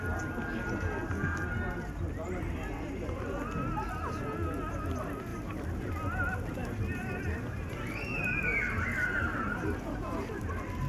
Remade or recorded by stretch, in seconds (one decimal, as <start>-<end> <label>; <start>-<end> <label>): 0.0-5.3 recorded; 5.3-5.9 remade; 5.9-6.6 recorded; 6.6-10.3 remade; 10.3-10.9 recorded